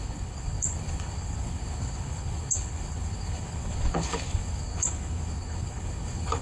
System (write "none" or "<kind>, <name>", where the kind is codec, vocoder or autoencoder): codec, HILCodec